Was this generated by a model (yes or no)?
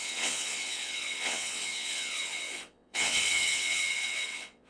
yes